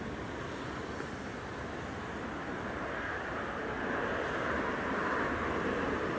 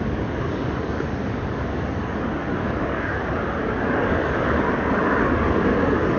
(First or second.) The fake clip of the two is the second